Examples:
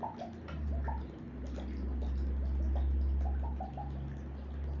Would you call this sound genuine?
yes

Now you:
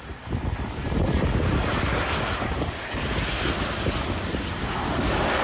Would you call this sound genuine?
yes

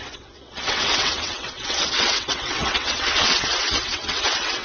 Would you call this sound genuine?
no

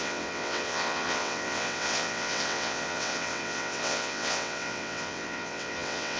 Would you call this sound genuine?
no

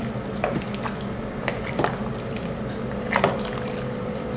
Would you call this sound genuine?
yes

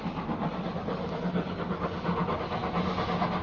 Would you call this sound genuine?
yes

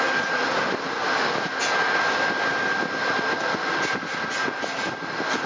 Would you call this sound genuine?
yes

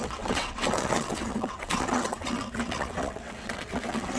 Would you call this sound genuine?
no